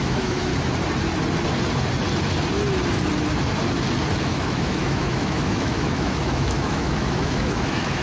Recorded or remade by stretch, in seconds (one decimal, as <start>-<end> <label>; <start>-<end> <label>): 0.0-0.5 remade; 0.5-4.2 recorded; 4.2-8.0 remade